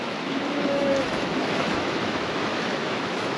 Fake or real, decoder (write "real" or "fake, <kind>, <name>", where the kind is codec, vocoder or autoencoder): fake, autoencoder, DAC-VAE